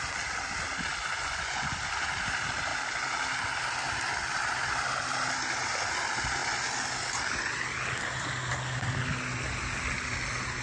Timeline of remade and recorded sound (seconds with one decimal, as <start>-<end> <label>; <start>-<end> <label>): 0.0-1.2 recorded; 1.2-1.8 remade; 1.8-10.6 recorded